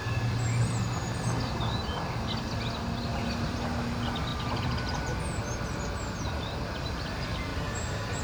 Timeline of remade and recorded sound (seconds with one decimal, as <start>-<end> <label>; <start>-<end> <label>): 0.0-7.5 remade; 7.5-8.2 recorded